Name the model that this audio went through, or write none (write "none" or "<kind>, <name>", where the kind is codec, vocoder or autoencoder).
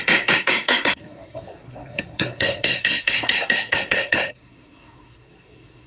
codec, SNAC